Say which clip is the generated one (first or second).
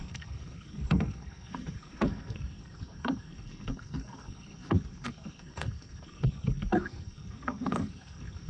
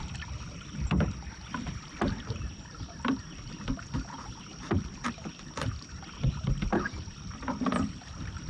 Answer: first